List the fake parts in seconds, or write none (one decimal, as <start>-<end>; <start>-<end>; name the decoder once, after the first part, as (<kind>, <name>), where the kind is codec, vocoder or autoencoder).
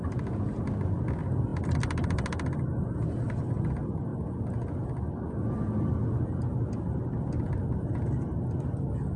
none